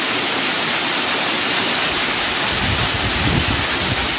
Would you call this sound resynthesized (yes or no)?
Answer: no